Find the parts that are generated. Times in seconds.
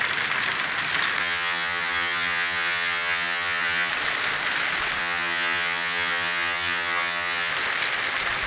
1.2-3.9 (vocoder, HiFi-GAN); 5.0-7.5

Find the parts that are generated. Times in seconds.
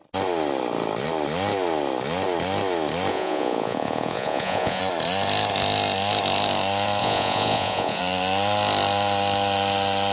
3.1-4.8 (vocoder, Vocos); 7.0-8.0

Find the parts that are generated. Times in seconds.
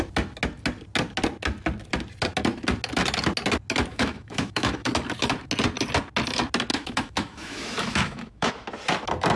3.9-4.9 (autoencoder, DAC-VAE); 6.7-8.5